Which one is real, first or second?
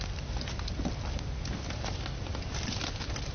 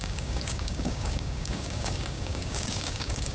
first